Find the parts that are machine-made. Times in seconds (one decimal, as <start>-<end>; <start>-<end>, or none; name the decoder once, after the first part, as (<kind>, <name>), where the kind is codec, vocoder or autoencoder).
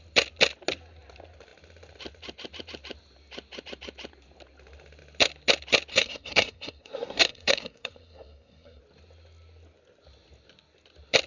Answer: 5.9-8.8 (codec, SNAC)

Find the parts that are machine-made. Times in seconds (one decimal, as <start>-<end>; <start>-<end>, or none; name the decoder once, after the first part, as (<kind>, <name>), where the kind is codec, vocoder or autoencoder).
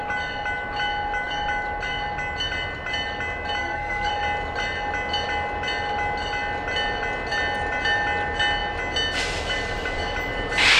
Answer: 3.6-4.1 (codec, SNAC)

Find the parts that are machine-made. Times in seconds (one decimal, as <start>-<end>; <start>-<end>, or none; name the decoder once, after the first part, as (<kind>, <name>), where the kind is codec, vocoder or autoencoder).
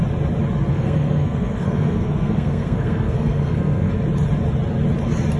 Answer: 0.7-3.9 (codec, SNAC)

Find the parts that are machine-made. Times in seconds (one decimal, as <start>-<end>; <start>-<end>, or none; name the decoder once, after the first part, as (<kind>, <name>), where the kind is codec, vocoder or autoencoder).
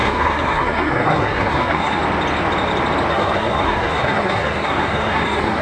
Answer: 0.0-2.0 (codec, SNAC); 3.1-5.6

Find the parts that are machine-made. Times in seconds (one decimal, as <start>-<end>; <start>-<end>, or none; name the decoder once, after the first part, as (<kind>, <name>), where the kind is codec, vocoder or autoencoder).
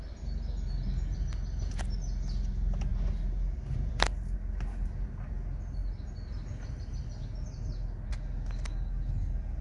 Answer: none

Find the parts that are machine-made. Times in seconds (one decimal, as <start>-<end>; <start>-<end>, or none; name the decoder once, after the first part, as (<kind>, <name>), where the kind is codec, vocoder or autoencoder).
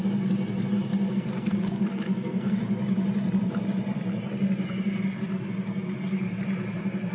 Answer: 1.1-2.6 (codec, SNAC)